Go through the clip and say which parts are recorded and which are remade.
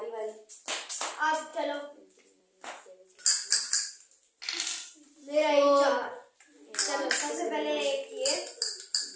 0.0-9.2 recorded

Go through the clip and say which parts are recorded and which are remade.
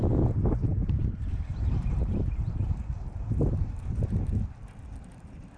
0.0-0.7 recorded; 0.7-4.1 remade; 4.1-5.6 recorded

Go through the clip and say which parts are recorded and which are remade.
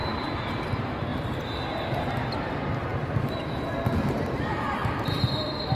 0.0-2.9 recorded; 2.9-3.7 remade; 3.7-4.8 recorded; 4.8-5.8 remade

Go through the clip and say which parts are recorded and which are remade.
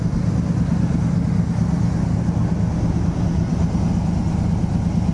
0.0-5.1 recorded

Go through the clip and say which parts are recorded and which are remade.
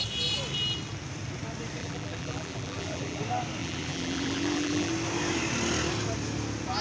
0.0-1.8 recorded; 1.8-3.2 remade; 3.2-3.6 recorded; 3.6-4.9 remade; 4.9-6.8 recorded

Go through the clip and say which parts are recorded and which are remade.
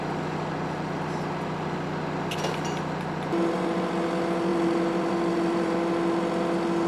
0.0-4.5 recorded; 4.5-5.8 remade; 5.8-6.9 recorded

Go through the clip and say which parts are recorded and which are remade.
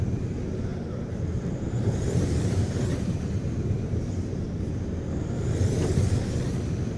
0.0-0.7 recorded; 0.7-4.9 remade; 4.9-7.0 recorded